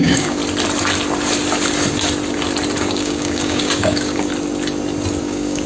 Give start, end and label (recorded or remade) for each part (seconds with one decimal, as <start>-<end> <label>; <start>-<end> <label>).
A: 0.0-0.4 remade; 0.4-2.8 recorded; 2.8-4.3 remade; 4.3-5.2 recorded; 5.2-5.7 remade